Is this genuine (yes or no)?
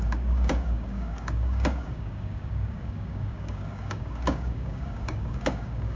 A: no